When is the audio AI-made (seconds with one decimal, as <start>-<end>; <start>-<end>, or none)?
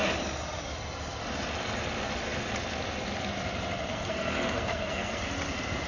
3.9-5.2